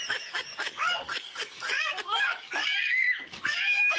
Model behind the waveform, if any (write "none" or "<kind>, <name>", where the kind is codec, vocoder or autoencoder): codec, DAC